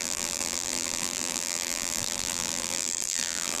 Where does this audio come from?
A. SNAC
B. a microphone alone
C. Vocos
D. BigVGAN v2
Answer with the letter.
D